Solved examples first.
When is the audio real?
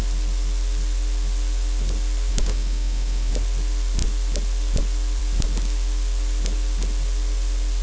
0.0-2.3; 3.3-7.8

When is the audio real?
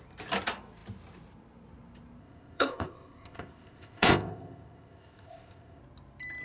0.0-2.2; 5.8-6.4